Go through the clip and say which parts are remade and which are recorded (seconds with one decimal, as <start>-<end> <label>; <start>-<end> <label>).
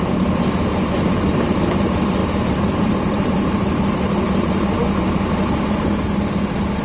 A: 0.0-2.2 recorded; 2.2-3.5 remade; 3.5-6.8 recorded